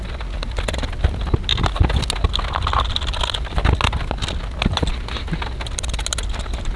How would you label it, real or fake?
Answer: real